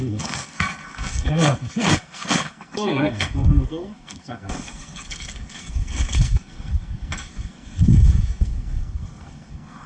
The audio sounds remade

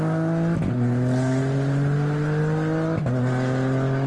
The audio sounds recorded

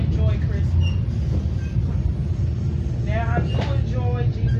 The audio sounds recorded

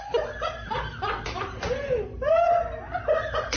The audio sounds remade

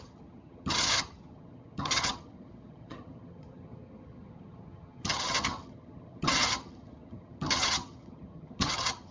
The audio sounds remade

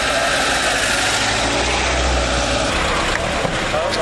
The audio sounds recorded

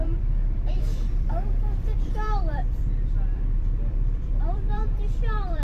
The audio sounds remade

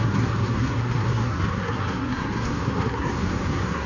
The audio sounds remade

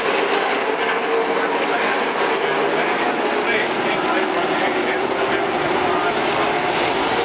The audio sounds recorded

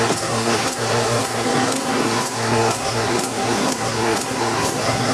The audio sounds remade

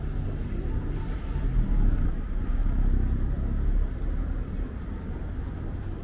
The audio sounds recorded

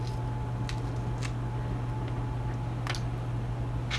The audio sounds recorded